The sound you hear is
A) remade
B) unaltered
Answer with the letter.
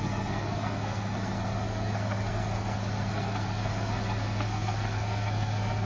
A